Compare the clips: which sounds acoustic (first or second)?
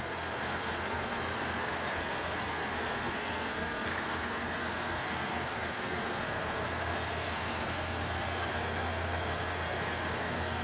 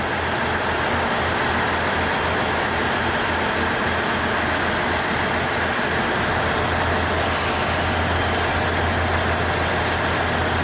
second